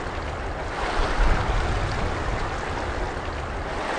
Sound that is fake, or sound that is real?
real